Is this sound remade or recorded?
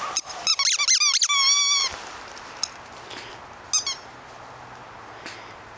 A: recorded